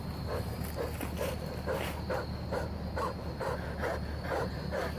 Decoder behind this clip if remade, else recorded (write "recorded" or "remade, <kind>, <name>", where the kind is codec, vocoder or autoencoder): recorded